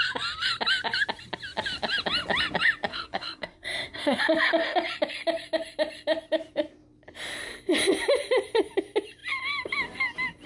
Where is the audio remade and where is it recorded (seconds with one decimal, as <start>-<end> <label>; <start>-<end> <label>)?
0.0-2.9 recorded; 2.9-4.2 remade; 4.2-10.5 recorded